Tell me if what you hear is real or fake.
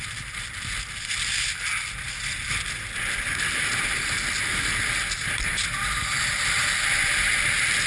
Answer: real